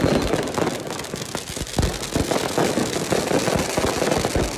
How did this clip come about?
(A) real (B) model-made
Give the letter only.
A